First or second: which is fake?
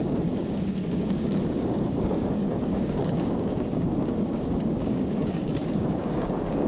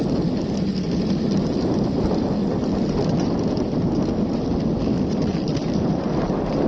first